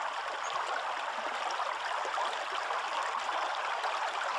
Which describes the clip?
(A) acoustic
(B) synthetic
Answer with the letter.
A